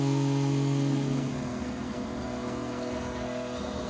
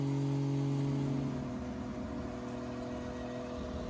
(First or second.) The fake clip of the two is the first